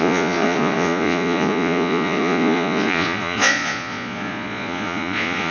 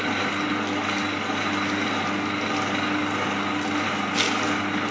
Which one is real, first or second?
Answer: second